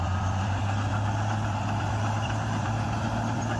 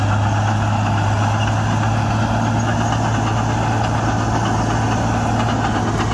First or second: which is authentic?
second